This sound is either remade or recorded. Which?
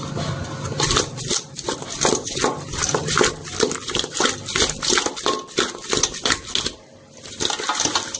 recorded